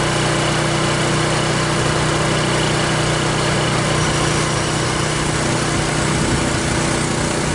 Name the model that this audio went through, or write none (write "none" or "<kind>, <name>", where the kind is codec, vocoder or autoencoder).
none